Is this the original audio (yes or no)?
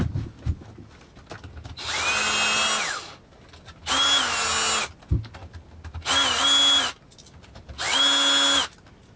yes